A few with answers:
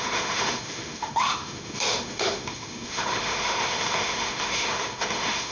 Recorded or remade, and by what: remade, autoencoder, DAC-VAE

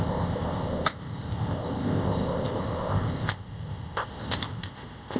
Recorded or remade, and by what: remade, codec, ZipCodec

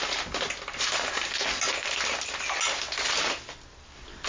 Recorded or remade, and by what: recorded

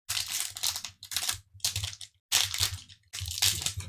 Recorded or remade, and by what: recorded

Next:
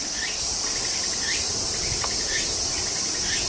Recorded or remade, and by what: recorded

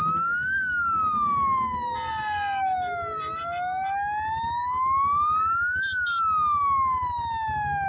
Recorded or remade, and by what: recorded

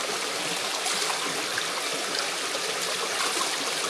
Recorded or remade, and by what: recorded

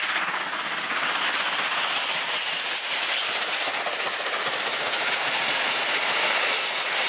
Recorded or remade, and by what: recorded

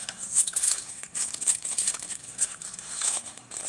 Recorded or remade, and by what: remade, codec, SNAC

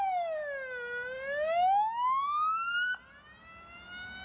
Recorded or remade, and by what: recorded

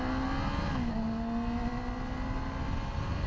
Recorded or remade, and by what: recorded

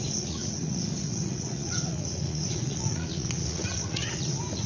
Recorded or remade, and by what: remade, vocoder, Vocos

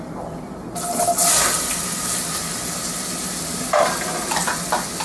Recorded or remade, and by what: recorded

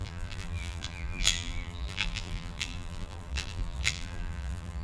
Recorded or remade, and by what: remade, vocoder, BigVGAN v2